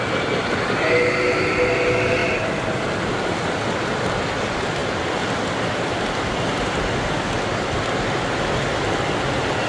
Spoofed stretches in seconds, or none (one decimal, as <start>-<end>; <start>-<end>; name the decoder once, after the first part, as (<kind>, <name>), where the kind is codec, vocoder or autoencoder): none